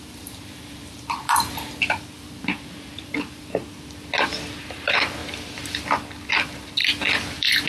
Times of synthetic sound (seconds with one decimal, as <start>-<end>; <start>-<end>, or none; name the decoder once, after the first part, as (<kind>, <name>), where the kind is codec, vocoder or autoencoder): 0.0-3.6 (vocoder, BigVGAN v2); 4.6-5.2; 6.3-6.8; 7.3-7.7